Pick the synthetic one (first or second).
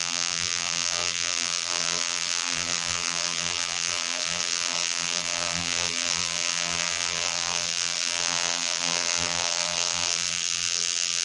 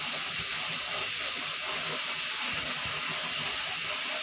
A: first